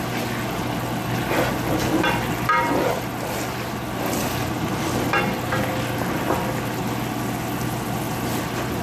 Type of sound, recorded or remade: recorded